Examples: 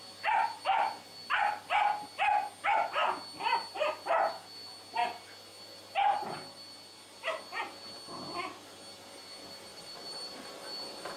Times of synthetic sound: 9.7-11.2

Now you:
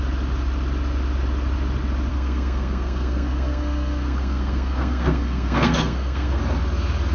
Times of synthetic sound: 2.1-6.4

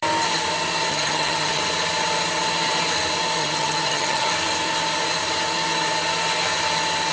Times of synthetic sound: 0.9-1.6; 3.4-4.3

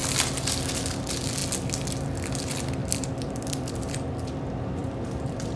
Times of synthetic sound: 1.0-1.4; 2.4-5.6

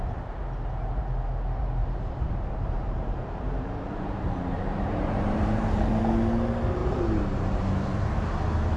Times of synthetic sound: 1.8-6.0; 6.8-8.3

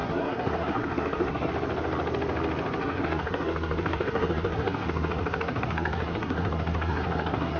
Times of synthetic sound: 0.0-1.5; 2.8-7.6

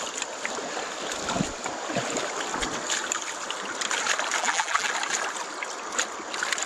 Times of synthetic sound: 4.4-4.9